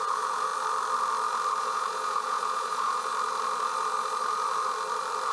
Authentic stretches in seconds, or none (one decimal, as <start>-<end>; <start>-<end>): 0.5-1.6; 3.1-5.3